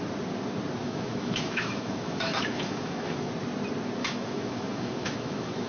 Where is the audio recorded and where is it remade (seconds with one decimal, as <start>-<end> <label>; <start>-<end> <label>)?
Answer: 0.0-0.8 recorded; 0.8-3.3 remade; 3.3-4.0 recorded; 4.0-5.7 remade